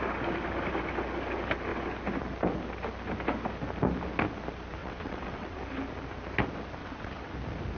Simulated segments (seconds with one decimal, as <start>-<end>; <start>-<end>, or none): 4.8-5.6; 6.8-7.3